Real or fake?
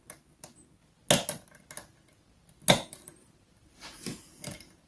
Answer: real